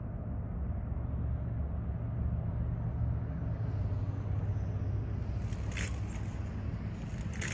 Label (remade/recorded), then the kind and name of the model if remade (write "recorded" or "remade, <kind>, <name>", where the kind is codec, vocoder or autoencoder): recorded